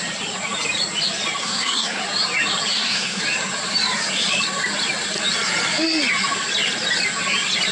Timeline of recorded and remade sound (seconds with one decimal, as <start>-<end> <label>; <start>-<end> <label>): 0.0-1.4 recorded; 1.4-2.0 remade; 2.0-2.7 recorded; 2.7-3.2 remade; 3.2-7.7 recorded